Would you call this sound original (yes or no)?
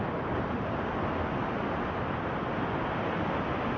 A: yes